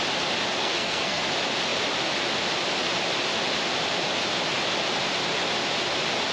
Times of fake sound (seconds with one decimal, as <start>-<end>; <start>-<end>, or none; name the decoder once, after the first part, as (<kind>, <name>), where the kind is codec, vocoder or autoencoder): 0.6-1.2 (codec, SNAC)